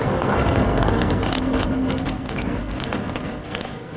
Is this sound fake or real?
fake